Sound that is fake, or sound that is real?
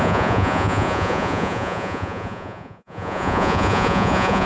fake